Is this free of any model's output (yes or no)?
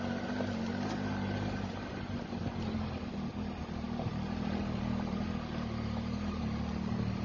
yes